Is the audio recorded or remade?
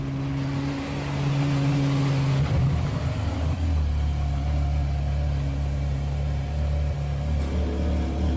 recorded